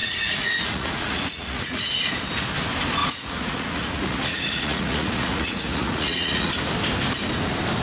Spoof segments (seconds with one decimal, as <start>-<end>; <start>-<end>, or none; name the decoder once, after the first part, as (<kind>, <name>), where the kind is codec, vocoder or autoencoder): 0.0-1.9 (vocoder, Vocos); 3.0-6.5

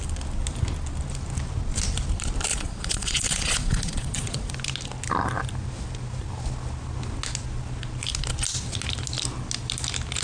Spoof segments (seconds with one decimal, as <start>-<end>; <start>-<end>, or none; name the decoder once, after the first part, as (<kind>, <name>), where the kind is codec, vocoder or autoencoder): 2.5-4.5 (vocoder, Vocos)

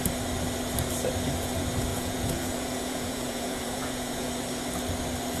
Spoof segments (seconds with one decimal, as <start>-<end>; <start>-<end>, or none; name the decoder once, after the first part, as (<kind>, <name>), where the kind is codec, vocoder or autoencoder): 1.9-4.3 (vocoder, Vocos)

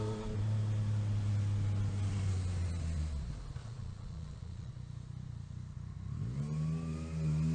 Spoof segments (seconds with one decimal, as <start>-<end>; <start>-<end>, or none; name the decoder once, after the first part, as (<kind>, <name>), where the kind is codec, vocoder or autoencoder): 3.6-4.7 (vocoder, Vocos)